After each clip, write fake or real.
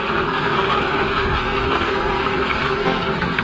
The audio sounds fake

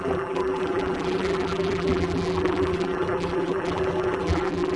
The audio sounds fake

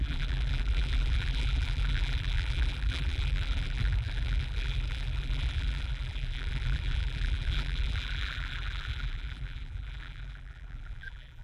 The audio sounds fake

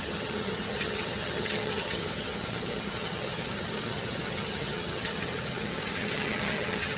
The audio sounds fake